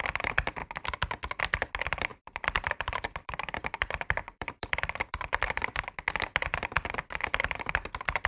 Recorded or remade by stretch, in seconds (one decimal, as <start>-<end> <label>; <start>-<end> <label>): 0.0-2.1 recorded; 2.1-5.8 remade; 5.8-8.3 recorded